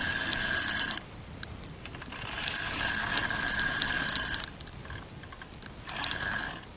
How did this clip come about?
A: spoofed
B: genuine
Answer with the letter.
B